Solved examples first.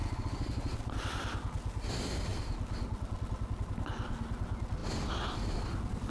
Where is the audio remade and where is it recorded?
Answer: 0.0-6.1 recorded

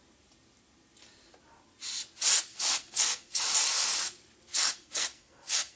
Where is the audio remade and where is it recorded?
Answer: 0.0-2.5 recorded; 2.5-3.4 remade; 3.4-4.5 recorded; 4.5-5.8 remade

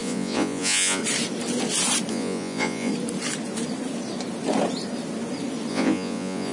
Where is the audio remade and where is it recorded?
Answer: 0.0-1.0 remade; 1.0-2.1 recorded; 2.1-2.9 remade; 2.9-5.7 recorded; 5.7-6.5 remade

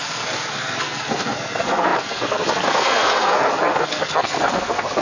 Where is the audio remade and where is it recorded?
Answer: 0.0-5.0 remade

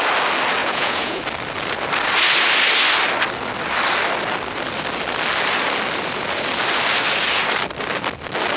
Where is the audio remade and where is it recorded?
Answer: 0.0-0.6 recorded; 0.6-1.2 remade; 1.2-8.6 recorded

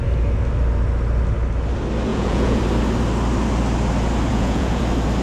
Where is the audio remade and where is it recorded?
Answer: 0.0-2.1 recorded; 2.1-2.6 remade; 2.6-4.3 recorded; 4.3-4.8 remade; 4.8-5.2 recorded

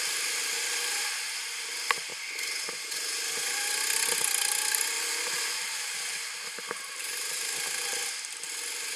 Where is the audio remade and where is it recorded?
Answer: 0.0-9.0 recorded

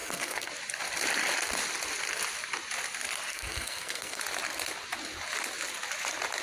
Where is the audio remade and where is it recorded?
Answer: 0.0-0.5 remade; 0.5-3.3 recorded; 3.3-4.2 remade; 4.2-6.4 recorded